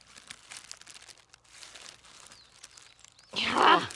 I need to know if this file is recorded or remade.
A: recorded